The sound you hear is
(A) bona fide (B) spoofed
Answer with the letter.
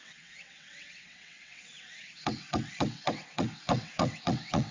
B